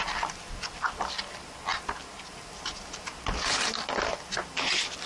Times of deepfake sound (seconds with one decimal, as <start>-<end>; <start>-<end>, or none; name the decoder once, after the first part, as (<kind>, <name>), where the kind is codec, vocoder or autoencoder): none